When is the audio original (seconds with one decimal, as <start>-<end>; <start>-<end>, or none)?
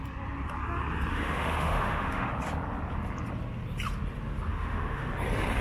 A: 0.0-1.1; 2.3-4.5; 5.1-5.6